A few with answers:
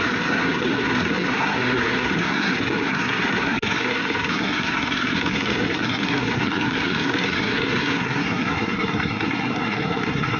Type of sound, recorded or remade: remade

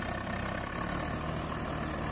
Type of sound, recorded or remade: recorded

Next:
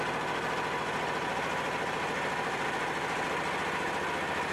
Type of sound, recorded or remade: recorded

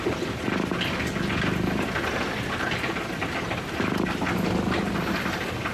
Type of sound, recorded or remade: recorded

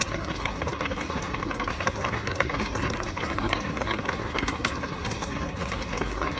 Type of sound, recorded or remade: remade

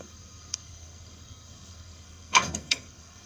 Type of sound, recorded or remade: remade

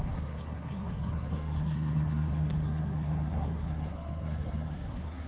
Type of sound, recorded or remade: remade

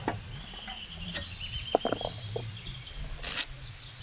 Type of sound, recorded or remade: recorded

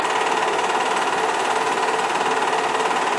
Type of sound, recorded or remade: recorded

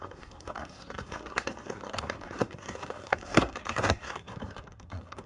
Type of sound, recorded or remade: remade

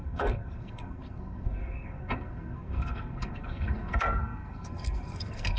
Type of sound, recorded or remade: remade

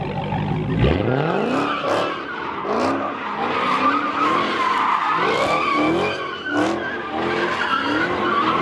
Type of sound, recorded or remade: recorded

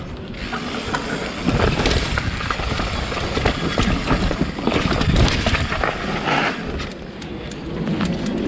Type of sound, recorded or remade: recorded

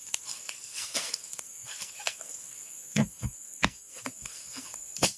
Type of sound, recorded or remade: remade